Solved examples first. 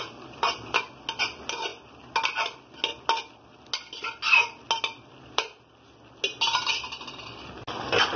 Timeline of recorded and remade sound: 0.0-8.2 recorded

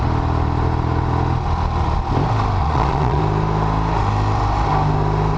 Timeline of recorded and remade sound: 0.0-2.6 recorded; 2.6-3.2 remade; 3.2-5.4 recorded